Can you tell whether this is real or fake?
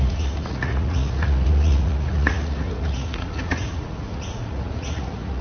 fake